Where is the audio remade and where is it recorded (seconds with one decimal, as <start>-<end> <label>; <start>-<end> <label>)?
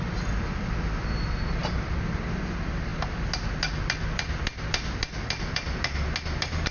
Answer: 0.0-6.7 recorded